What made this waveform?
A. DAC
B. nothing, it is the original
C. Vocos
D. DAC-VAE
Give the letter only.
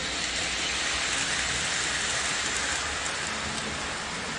B